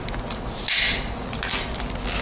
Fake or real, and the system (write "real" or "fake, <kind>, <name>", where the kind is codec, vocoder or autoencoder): real